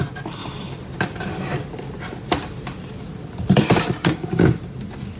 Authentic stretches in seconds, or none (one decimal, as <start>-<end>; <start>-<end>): 0.0-0.4; 3.5-5.2